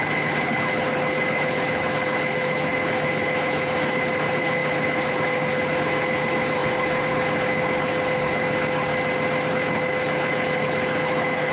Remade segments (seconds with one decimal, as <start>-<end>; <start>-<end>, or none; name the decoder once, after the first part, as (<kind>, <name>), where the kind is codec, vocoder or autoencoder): 0.0-8.9 (codec, HILCodec); 9.5-11.5